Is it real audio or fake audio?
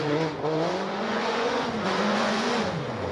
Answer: fake